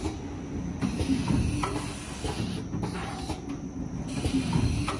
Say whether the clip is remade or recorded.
recorded